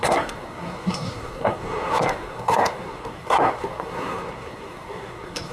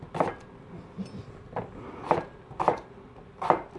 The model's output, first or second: first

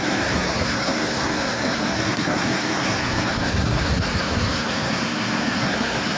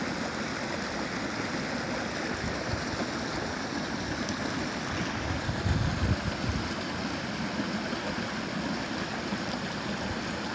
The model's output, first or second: first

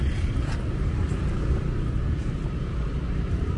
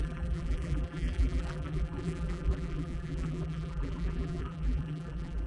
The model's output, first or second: second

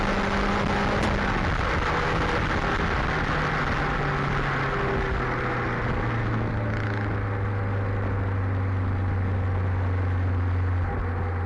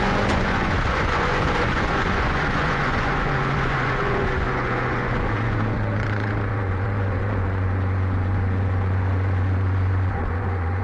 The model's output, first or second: second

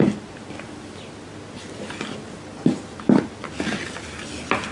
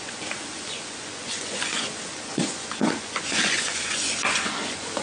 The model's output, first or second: second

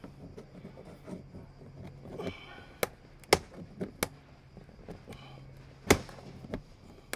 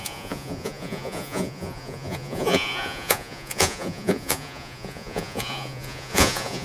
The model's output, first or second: second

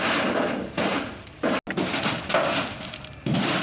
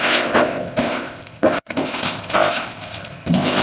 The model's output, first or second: second